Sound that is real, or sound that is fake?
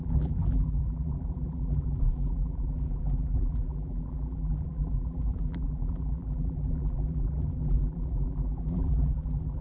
fake